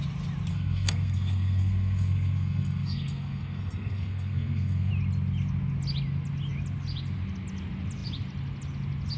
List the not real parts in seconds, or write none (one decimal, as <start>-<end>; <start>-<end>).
0.5-4.9